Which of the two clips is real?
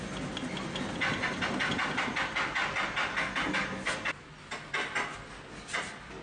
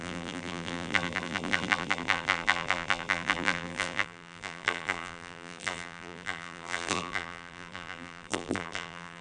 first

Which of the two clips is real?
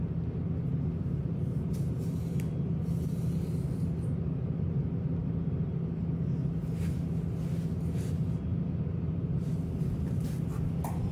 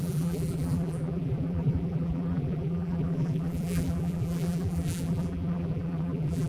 first